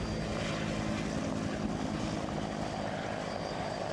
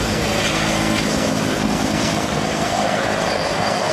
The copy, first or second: second